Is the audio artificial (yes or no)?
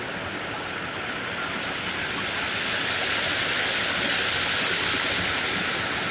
no